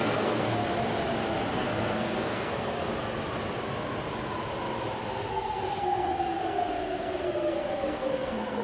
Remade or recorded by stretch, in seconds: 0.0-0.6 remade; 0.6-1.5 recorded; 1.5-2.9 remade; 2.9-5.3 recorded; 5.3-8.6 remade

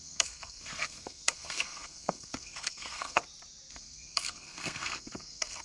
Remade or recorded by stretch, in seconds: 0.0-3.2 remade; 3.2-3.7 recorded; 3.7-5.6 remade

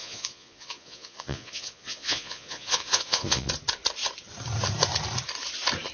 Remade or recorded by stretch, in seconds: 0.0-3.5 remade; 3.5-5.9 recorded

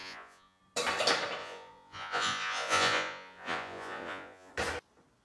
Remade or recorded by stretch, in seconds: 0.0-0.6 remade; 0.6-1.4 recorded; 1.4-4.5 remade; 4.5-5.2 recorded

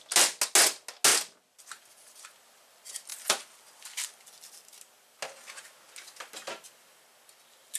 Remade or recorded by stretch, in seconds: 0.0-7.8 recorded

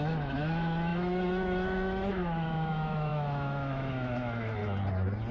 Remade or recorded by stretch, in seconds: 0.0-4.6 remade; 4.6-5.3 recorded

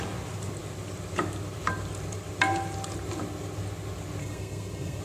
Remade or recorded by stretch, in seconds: 0.0-4.2 recorded; 4.2-5.0 remade

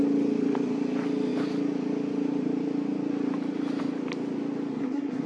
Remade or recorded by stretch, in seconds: 0.0-4.7 recorded; 4.7-5.3 remade